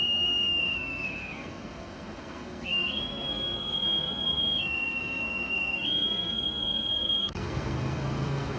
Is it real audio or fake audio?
fake